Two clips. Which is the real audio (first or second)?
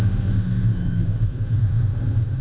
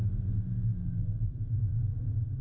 second